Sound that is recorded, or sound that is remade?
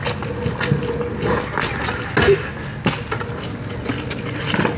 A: recorded